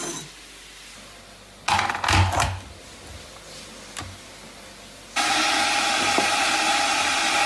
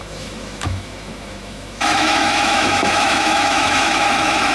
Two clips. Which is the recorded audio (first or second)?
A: first